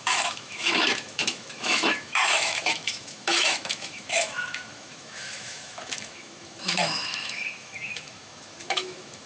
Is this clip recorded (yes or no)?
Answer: no